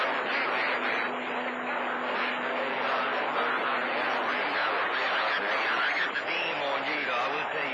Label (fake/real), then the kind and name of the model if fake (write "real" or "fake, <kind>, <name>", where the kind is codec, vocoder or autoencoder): real